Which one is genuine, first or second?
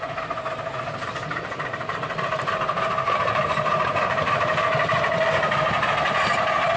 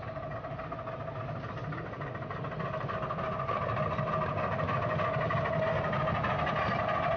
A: second